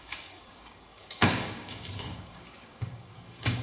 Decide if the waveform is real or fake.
fake